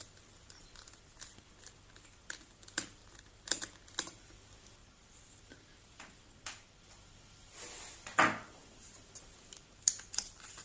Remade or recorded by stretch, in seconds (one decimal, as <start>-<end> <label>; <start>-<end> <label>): 0.0-10.6 recorded